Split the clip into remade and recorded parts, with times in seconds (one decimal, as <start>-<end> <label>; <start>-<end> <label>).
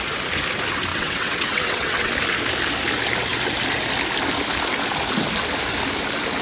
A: 0.0-0.9 recorded; 0.9-2.1 remade; 2.1-6.4 recorded